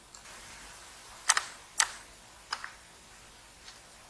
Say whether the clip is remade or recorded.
recorded